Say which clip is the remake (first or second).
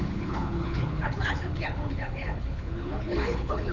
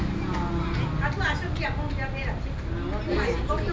first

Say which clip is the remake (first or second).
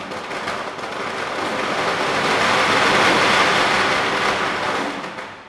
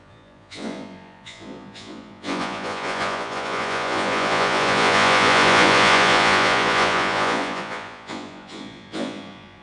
second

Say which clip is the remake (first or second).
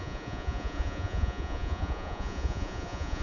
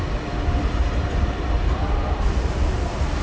first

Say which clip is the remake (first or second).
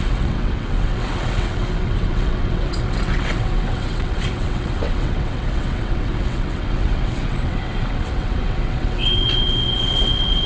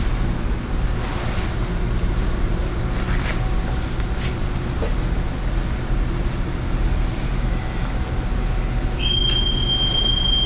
first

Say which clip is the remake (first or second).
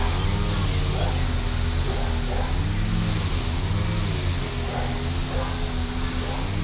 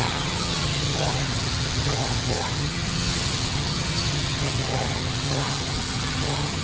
second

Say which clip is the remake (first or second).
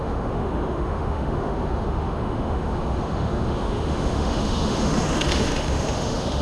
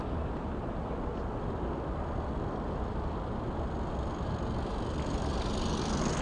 first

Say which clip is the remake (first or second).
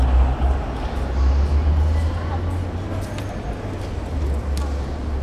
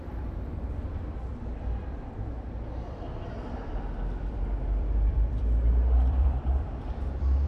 second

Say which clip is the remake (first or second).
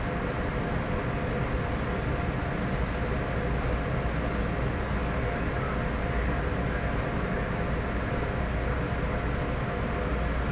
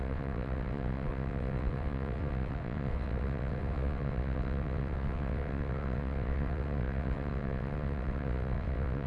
second